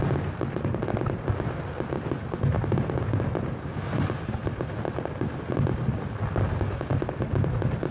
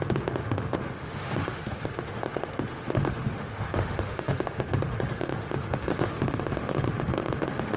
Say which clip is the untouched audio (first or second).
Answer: first